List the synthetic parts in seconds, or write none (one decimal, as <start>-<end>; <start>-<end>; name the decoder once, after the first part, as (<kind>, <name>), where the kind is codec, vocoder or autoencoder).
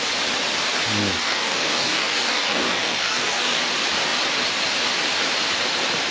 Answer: 1.2-3.6 (codec, DAC)